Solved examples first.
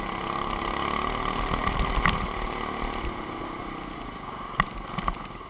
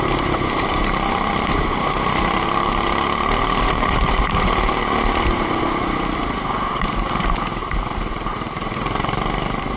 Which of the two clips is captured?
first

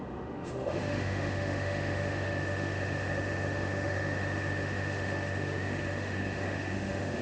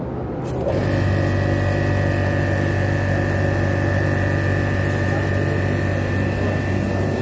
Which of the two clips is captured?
second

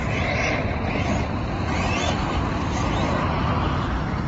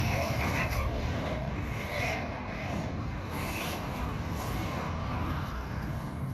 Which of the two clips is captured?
first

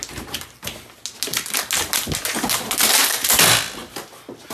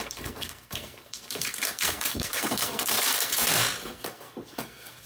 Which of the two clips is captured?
first